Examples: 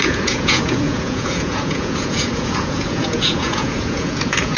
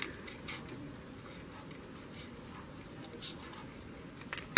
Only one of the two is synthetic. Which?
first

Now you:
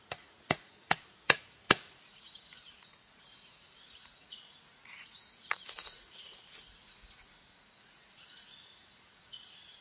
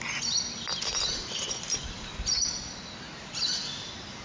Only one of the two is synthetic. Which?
first